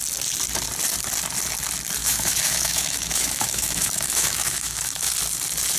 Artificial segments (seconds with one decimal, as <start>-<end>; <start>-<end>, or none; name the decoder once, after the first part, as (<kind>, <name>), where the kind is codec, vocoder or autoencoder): 2.0-5.1 (autoencoder, DAC-VAE)